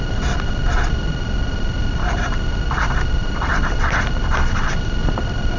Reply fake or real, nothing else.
real